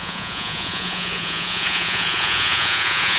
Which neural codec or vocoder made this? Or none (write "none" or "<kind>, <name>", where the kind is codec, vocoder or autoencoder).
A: vocoder, Vocos